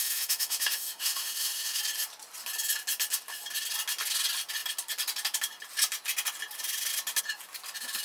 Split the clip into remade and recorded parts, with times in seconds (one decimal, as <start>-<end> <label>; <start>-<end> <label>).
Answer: 0.0-1.8 remade; 1.8-8.0 recorded